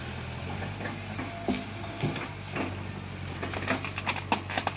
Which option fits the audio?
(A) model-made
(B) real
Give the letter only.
B